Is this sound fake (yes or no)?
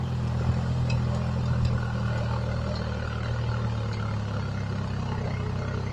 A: no